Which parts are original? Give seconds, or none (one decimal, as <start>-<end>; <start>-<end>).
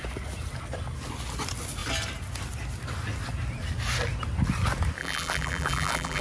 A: 0.0-5.0